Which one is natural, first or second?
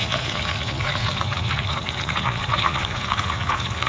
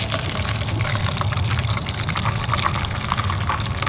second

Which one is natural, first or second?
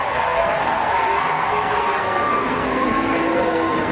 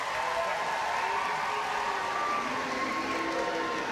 second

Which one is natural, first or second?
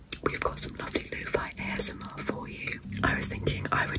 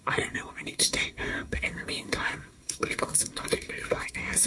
first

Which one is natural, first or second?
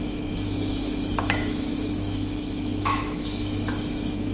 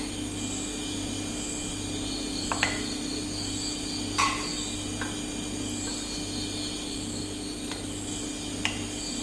second